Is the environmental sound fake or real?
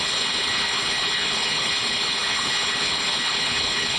fake